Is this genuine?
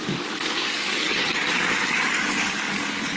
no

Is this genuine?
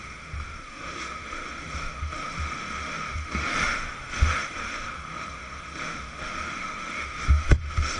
no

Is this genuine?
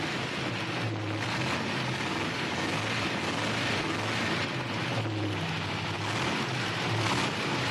yes